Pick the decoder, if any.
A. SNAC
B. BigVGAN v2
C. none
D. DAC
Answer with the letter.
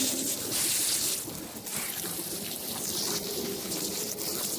B